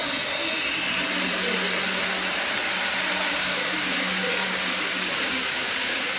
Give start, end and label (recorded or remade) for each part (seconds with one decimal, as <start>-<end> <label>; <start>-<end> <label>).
0.0-3.3 recorded; 3.3-6.2 remade